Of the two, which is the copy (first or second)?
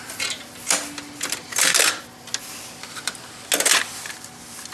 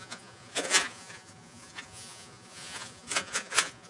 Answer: second